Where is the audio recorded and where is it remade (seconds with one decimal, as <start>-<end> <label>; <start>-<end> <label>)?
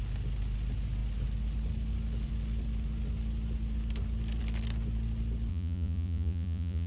0.0-5.5 recorded; 5.5-6.9 remade